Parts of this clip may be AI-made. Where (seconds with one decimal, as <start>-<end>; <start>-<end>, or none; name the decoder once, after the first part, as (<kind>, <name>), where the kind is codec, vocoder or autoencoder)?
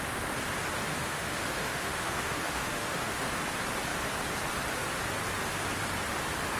0.9-3.3 (autoencoder, DAC-VAE)